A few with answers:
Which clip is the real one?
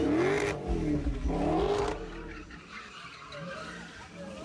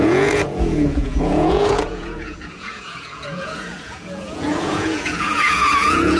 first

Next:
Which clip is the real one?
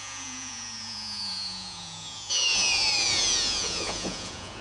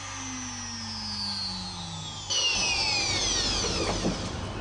second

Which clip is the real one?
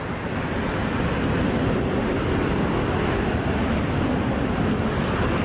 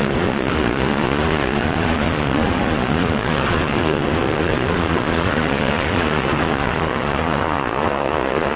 first